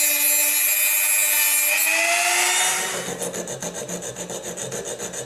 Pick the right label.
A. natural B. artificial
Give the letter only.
A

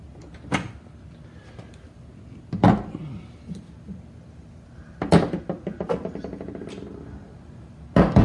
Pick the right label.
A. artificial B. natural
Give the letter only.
B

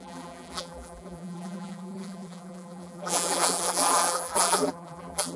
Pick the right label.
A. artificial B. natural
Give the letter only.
A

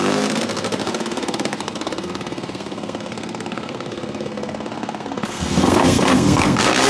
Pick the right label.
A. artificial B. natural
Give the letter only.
A